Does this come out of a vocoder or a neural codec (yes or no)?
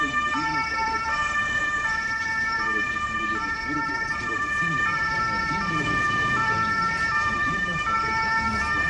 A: yes